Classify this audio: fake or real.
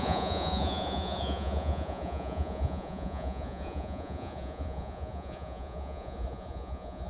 fake